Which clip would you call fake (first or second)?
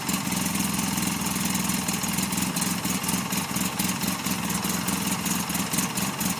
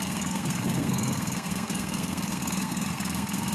second